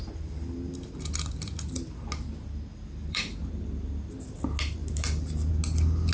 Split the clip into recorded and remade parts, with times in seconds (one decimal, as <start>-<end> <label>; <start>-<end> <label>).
0.0-3.0 recorded; 3.0-3.5 remade; 3.5-4.8 recorded; 4.8-5.5 remade; 5.5-6.1 recorded